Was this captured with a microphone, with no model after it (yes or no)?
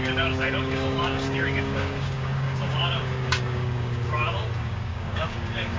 no